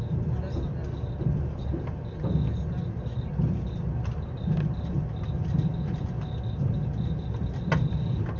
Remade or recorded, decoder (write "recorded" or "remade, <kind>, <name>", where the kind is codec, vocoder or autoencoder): recorded